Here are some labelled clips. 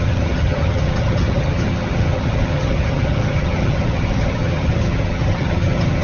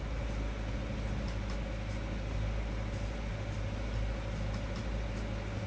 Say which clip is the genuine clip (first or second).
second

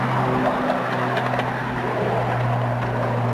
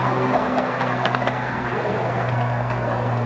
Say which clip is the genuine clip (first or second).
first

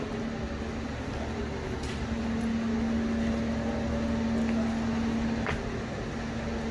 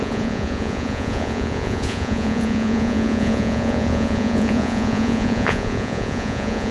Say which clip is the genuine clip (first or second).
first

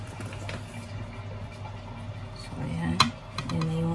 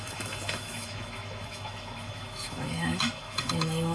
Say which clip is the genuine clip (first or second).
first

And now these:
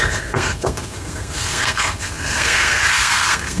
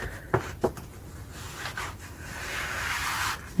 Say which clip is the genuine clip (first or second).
second